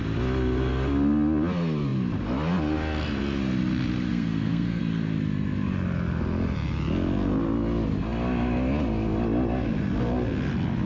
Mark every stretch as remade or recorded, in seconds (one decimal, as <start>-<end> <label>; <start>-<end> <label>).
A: 0.0-4.1 recorded; 4.1-4.8 remade; 4.8-10.9 recorded